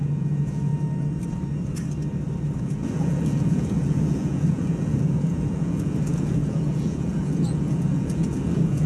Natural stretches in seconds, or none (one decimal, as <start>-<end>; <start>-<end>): 0.7-2.6